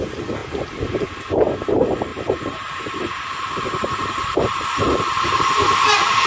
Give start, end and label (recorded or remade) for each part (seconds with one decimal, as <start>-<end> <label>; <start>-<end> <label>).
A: 0.0-2.1 recorded; 2.1-6.3 remade